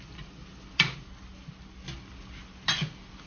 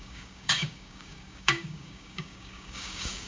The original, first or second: first